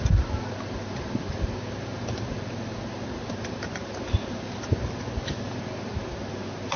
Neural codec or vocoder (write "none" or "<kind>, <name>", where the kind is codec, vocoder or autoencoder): none